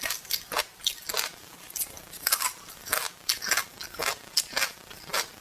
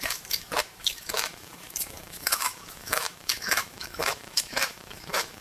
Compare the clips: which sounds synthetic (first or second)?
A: second